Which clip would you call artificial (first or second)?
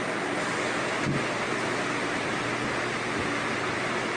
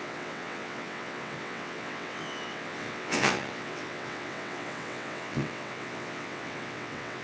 second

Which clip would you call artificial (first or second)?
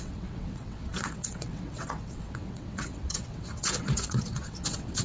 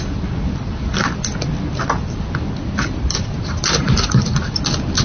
first